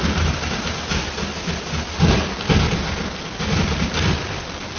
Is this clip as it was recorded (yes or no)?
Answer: yes